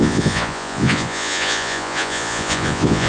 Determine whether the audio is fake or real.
fake